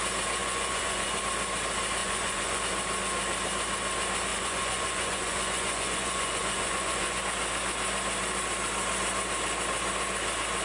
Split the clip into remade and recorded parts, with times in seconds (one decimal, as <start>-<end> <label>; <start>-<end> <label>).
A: 0.0-0.4 recorded; 0.4-1.2 remade; 1.2-2.0 recorded; 2.0-2.6 remade; 2.6-4.3 recorded; 4.3-7.2 remade; 7.2-10.6 recorded